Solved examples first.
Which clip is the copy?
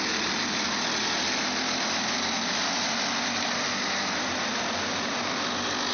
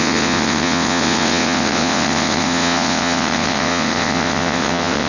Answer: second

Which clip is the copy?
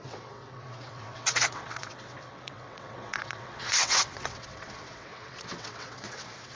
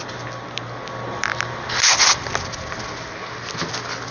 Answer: first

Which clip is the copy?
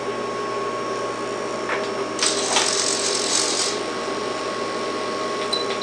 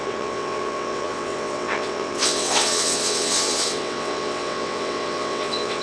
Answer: second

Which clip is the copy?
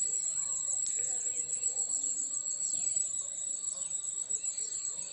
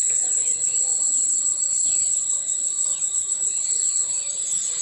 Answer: second